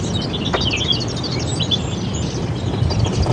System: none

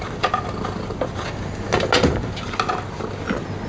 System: none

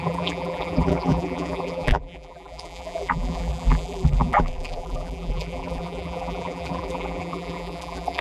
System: vocoder, BigVGAN v2